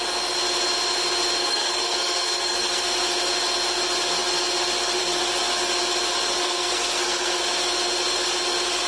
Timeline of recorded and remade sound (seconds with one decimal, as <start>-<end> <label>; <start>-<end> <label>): 0.0-1.4 recorded; 1.4-2.9 remade; 2.9-6.4 recorded; 6.4-7.4 remade; 7.4-8.9 recorded